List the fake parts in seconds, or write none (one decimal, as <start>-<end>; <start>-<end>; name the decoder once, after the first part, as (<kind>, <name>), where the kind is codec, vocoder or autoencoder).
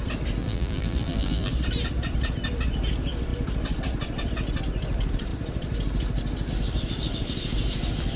0.4-1.5 (vocoder, BigVGAN v2)